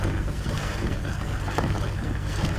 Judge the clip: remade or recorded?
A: remade